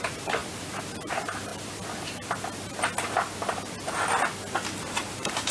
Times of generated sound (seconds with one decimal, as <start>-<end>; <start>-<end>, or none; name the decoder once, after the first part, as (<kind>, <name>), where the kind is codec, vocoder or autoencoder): 0.0-1.5 (vocoder, BigVGAN v2); 4.8-5.5